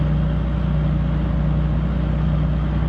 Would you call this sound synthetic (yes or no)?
no